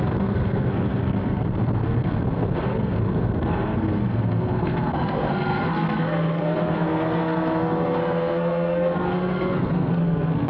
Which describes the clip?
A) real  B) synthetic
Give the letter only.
B